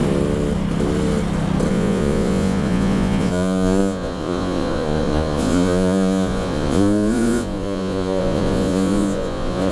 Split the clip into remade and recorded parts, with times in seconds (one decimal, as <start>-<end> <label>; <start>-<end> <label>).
0.0-1.7 recorded; 1.7-9.7 remade